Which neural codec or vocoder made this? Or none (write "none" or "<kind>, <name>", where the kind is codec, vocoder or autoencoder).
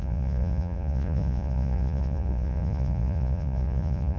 vocoder, Vocos